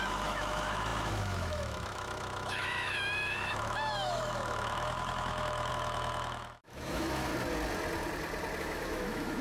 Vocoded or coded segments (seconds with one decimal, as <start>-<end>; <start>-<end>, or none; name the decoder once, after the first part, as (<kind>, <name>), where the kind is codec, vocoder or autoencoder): 0.0-7.3 (autoencoder, DAC-VAE); 8.6-9.4